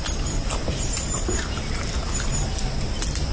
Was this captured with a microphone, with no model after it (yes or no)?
yes